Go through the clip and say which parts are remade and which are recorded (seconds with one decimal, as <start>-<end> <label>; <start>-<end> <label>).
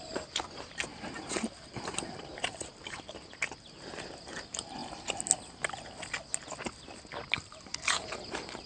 0.0-0.9 recorded; 0.9-3.0 remade; 3.0-4.8 recorded; 4.8-5.7 remade; 5.7-8.7 recorded